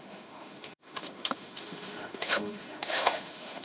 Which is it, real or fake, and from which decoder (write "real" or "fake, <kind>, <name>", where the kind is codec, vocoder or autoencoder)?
fake, autoencoder, DAC-VAE